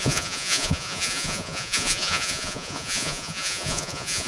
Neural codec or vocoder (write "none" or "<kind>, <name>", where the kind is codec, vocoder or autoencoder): vocoder, Vocos